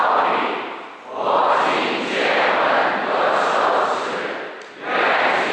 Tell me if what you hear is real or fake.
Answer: real